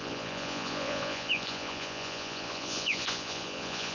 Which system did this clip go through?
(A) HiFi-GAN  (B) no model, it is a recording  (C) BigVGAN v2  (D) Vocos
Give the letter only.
D